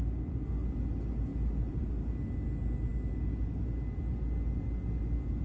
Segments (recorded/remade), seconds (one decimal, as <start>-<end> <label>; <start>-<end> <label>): 0.0-5.4 recorded